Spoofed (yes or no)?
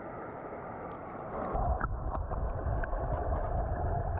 no